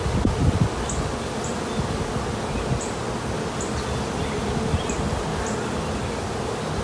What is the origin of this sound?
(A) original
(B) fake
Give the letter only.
A